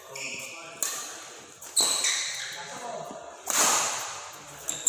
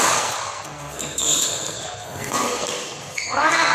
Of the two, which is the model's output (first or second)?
second